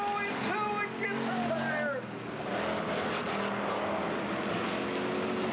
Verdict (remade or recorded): recorded